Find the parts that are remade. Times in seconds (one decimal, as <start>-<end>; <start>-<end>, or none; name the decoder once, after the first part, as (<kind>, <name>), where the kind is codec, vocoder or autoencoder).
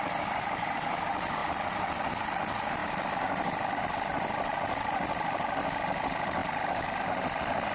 none